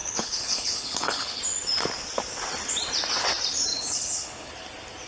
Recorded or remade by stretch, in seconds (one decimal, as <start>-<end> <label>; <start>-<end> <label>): 0.0-1.4 remade; 1.4-3.7 recorded; 3.7-4.5 remade; 4.5-5.1 recorded